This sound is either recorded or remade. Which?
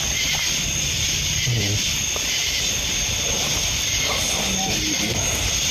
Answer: recorded